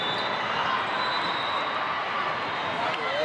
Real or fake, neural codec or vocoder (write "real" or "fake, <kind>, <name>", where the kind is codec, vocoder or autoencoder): real